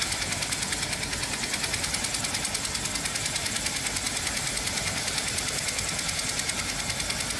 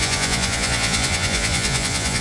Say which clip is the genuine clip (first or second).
first